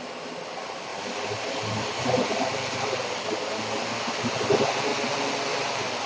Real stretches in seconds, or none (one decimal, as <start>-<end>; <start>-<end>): 0.0-0.9; 2.3-6.1